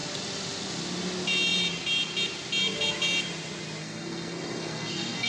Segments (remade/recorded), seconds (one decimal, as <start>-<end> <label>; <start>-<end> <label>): 0.0-3.8 recorded; 3.8-5.3 remade